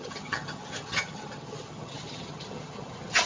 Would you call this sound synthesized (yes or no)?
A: yes